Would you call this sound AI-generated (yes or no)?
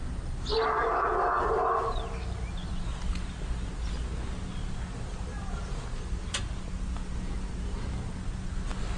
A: no